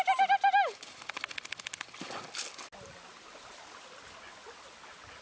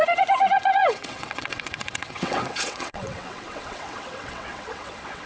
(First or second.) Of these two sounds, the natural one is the first